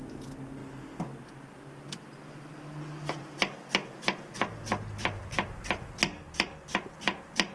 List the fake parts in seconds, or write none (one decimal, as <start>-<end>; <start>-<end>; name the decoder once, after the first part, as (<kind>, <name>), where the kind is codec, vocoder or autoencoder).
none